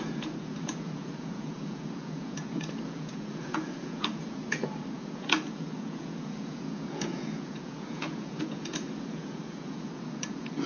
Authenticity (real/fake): fake